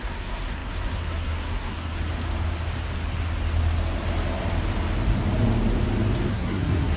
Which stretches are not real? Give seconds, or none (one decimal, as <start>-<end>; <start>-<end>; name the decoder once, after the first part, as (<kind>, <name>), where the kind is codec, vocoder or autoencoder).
0.0-2.1 (codec, SNAC); 6.3-7.0